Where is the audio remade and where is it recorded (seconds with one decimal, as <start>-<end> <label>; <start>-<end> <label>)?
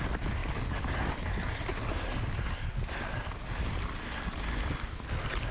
0.0-5.5 recorded